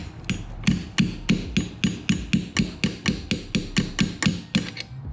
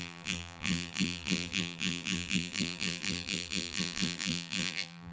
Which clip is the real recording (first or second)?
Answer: first